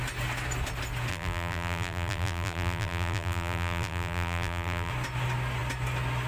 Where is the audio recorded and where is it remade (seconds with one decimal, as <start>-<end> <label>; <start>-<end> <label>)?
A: 0.0-1.1 recorded; 1.1-4.9 remade; 4.9-6.3 recorded